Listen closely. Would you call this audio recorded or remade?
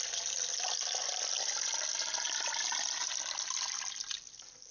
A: recorded